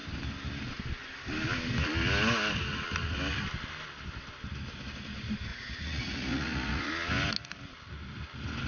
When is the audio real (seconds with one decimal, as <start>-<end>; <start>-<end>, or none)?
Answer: 0.0-5.5; 6.9-8.7